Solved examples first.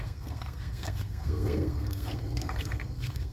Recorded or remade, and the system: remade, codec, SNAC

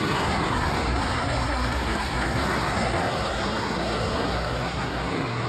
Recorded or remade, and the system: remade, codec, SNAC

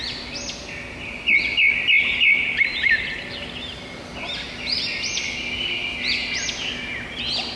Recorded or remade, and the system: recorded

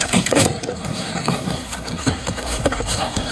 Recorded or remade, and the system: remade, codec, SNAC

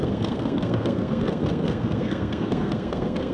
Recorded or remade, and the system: remade, codec, SNAC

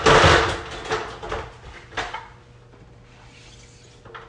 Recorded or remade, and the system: recorded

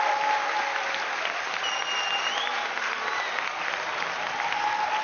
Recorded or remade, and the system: recorded